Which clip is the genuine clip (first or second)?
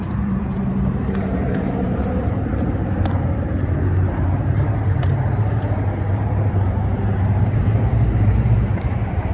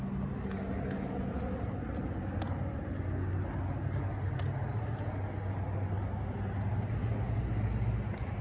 second